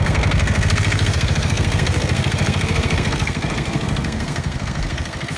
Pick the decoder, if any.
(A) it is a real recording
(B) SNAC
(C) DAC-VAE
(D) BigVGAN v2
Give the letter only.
B